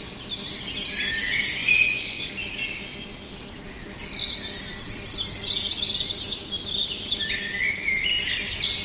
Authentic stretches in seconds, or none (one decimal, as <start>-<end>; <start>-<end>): 0.0-1.6; 2.3-8.8